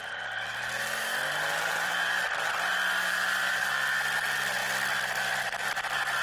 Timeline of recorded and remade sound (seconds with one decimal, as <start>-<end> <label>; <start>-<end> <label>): 0.0-6.2 recorded